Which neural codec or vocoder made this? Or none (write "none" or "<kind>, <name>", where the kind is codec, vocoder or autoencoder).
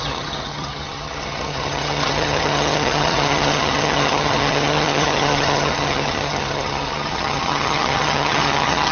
vocoder, HiFi-GAN